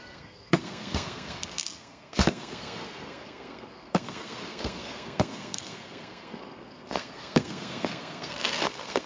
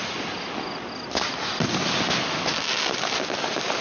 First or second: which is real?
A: second